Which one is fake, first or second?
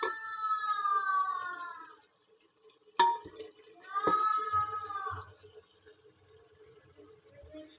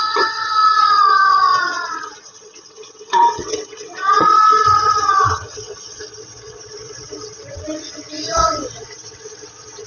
second